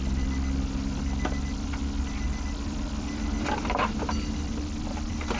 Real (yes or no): no